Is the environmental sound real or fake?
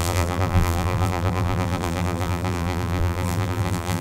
fake